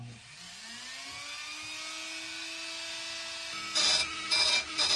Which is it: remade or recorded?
recorded